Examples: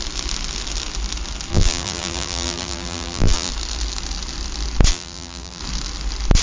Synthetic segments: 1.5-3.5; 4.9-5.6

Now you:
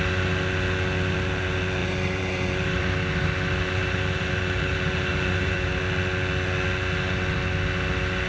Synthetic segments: 1.8-2.8; 3.8-5.8

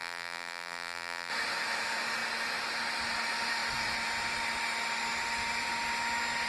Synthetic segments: 0.0-1.3

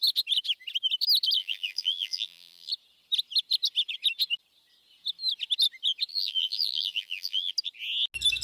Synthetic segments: 1.4-2.7; 6.1-7.5

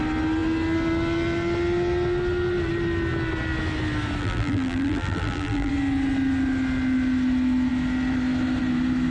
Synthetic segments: 4.2-5.7